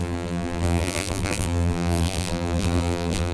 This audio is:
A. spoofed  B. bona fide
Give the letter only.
A